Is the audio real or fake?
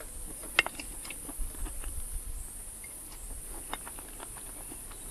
real